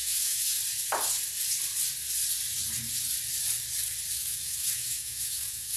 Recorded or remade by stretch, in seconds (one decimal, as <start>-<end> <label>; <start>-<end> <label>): 0.0-0.6 remade; 0.6-4.1 recorded; 4.1-5.8 remade